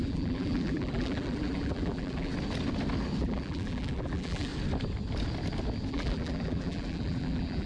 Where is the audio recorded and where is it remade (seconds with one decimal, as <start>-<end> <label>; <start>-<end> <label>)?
0.0-2.3 remade; 2.3-3.2 recorded; 3.2-4.5 remade; 4.5-5.9 recorded; 5.9-7.7 remade